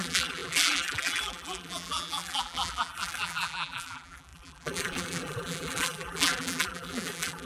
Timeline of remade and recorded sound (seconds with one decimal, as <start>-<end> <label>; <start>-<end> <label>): 0.0-7.5 remade